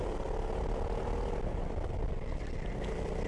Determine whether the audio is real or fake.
real